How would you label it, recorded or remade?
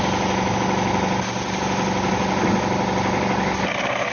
recorded